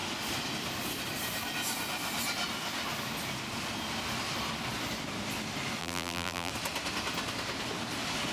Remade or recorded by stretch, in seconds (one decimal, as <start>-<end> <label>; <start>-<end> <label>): 0.0-5.8 recorded; 5.8-6.5 remade; 6.5-8.3 recorded